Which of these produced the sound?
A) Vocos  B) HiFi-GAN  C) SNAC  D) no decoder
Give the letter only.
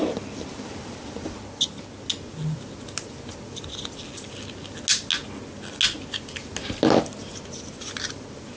D